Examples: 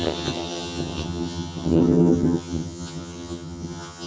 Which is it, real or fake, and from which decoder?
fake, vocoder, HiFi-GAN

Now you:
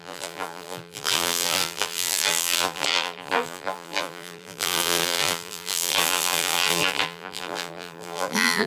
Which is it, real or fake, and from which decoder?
fake, vocoder, BigVGAN v2